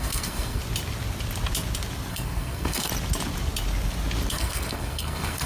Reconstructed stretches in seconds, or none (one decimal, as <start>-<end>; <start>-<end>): 0.0-0.6; 2.1-2.9; 4.3-5.5